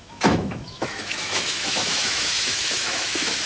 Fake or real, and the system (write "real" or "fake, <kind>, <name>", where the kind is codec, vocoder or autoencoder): fake, autoencoder, DAC-VAE